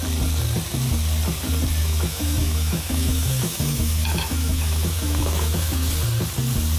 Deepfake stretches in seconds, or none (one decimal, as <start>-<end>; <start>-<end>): 1.8-5.9